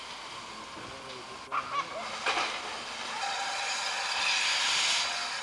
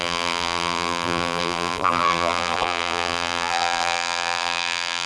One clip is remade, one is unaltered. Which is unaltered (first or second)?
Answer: first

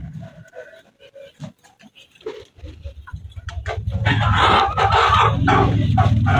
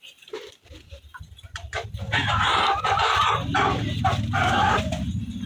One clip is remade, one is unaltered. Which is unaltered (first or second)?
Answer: first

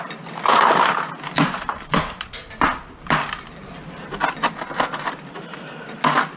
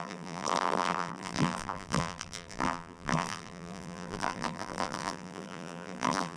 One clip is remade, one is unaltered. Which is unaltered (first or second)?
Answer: first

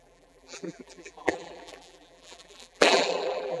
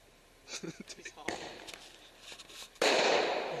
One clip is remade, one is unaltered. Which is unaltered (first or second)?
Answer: second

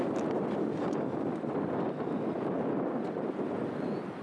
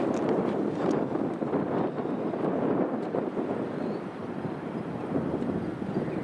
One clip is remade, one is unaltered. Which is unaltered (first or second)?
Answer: first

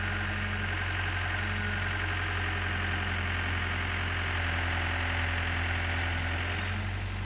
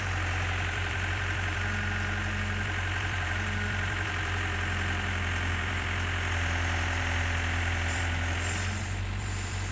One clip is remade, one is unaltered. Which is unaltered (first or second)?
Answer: first